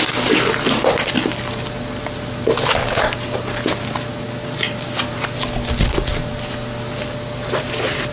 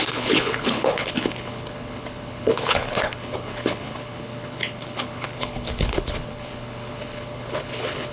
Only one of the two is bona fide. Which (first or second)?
first